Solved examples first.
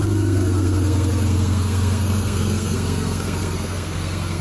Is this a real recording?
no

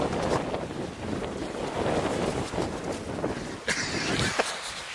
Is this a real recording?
yes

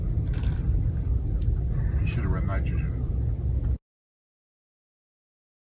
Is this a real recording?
yes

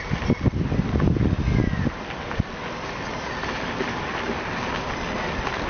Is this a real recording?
yes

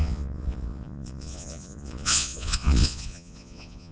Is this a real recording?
no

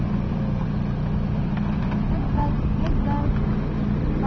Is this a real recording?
yes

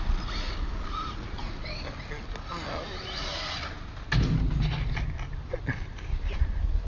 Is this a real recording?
yes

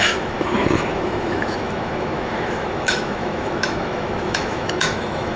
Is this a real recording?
no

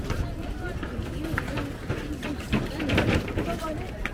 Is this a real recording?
yes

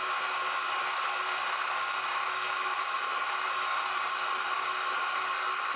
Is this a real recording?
yes